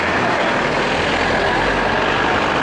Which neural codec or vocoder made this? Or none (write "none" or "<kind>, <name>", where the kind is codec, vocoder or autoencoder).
none